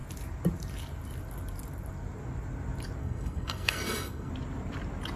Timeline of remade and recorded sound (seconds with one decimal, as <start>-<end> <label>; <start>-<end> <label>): 0.0-3.0 recorded; 3.0-4.3 remade; 4.3-5.2 recorded